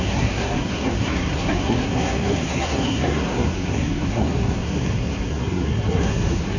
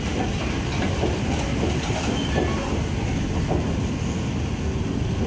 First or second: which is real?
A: second